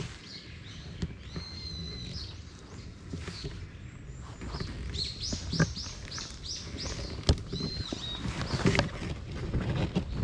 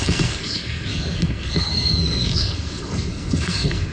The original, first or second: first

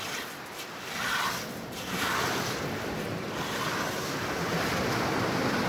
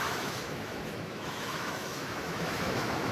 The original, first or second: first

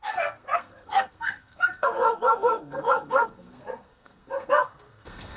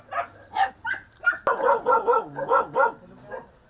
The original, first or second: second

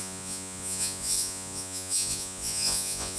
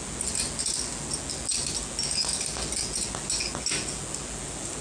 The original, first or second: second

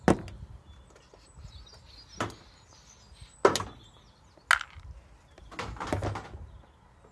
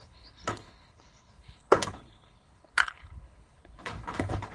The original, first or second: first